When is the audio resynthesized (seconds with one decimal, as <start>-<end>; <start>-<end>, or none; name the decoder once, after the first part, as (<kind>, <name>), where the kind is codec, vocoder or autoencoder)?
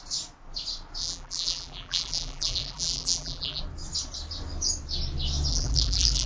1.0-3.6 (vocoder, BigVGAN v2); 5.5-6.3